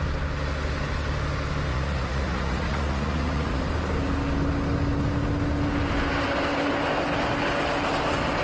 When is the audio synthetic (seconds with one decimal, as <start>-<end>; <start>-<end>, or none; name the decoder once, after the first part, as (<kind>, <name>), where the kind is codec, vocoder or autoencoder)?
1.7-3.6 (vocoder, Vocos)